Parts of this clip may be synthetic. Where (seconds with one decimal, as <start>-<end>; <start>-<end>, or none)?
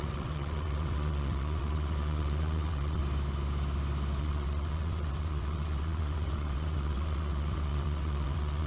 0.0-3.0; 4.2-8.7